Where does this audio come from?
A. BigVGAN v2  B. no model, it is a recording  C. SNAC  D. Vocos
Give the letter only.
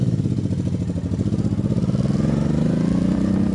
B